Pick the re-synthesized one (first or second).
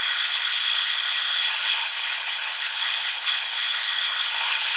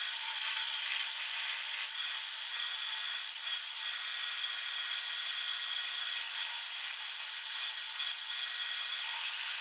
first